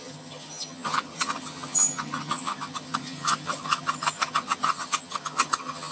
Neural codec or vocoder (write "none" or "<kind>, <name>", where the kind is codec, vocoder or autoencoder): vocoder, HiFi-GAN